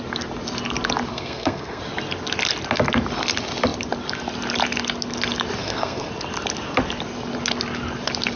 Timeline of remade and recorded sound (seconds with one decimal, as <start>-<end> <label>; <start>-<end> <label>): 0.0-1.1 recorded; 1.1-1.8 remade; 1.8-5.6 recorded; 5.6-6.1 remade; 6.1-8.4 recorded